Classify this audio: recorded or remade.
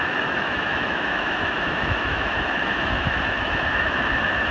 remade